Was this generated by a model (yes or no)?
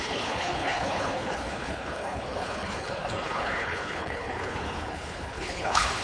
yes